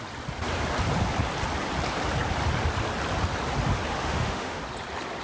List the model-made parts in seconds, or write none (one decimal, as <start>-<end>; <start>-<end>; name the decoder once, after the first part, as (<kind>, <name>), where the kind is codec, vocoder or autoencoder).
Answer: 4.0-4.6 (autoencoder, DAC-VAE)